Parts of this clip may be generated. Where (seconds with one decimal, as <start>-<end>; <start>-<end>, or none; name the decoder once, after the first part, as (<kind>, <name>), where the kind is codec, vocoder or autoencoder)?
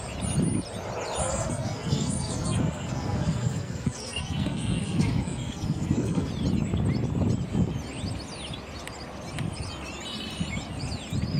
1.2-6.3 (codec, SNAC)